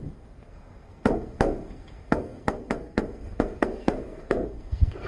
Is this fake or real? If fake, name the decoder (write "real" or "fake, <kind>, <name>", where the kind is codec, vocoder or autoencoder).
fake, codec, SNAC